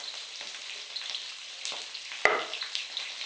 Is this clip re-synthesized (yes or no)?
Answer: no